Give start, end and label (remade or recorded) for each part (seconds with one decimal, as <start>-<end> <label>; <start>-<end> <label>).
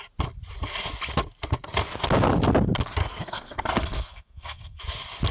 0.0-3.0 recorded; 3.0-4.8 remade; 4.8-5.3 recorded